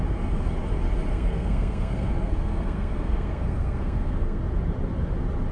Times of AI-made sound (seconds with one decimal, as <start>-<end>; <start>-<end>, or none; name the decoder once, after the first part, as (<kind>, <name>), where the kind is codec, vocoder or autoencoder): 1.1-4.4 (codec, SNAC)